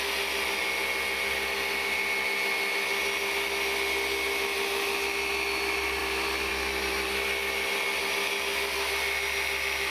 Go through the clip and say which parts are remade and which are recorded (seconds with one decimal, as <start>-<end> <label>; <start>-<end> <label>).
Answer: 0.0-9.9 recorded

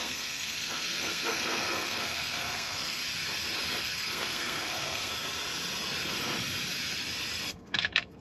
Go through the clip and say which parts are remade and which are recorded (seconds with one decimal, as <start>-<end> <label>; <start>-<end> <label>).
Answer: 0.0-3.0 remade; 3.0-3.8 recorded; 3.8-5.1 remade; 5.1-7.5 recorded; 7.5-8.2 remade

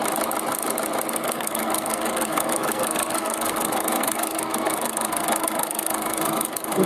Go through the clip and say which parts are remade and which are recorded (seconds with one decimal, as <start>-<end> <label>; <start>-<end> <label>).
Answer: 0.0-1.1 recorded; 1.1-6.9 remade

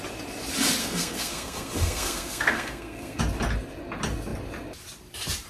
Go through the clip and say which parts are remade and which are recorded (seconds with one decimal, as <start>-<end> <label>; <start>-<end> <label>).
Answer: 0.0-0.8 recorded; 0.8-3.2 remade; 3.2-5.5 recorded

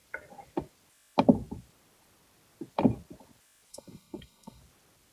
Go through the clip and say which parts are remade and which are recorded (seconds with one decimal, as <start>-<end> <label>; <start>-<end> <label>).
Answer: 0.0-3.7 recorded; 3.7-4.6 remade; 4.6-5.1 recorded

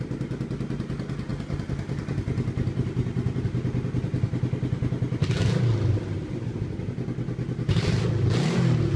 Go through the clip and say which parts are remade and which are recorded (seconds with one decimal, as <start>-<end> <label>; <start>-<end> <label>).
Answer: 0.0-9.0 recorded

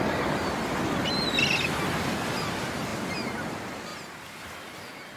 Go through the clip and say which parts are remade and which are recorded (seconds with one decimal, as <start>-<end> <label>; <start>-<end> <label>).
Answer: 0.0-5.2 recorded